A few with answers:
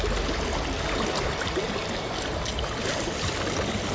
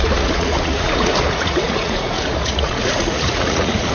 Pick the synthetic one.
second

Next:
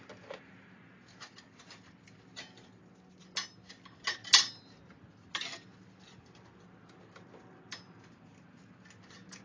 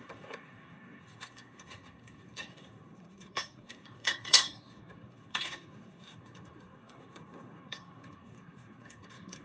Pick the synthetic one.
second